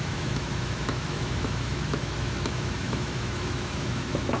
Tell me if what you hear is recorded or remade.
remade